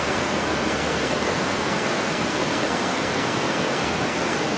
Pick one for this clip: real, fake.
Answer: fake